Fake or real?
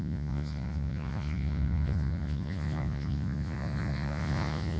fake